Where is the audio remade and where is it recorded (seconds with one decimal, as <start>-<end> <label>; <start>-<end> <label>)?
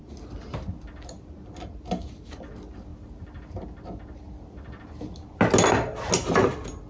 0.0-6.9 recorded